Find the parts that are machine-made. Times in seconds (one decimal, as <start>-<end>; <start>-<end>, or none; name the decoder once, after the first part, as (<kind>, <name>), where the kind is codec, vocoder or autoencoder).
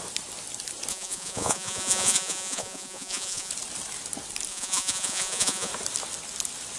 0.9-3.5 (vocoder, Vocos); 4.5-5.7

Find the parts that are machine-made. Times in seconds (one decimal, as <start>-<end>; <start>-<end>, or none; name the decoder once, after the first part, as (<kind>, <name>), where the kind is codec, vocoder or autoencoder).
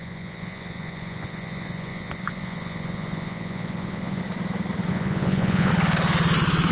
0.0-4.2 (vocoder, Vocos); 4.9-5.7